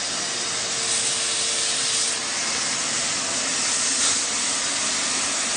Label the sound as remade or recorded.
recorded